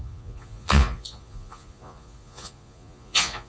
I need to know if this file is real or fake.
fake